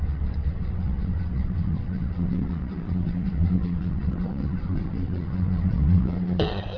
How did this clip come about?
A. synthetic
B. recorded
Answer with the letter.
A